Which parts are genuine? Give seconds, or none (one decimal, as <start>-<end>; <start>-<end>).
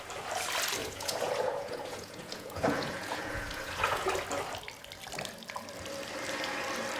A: 0.0-0.8; 4.1-7.0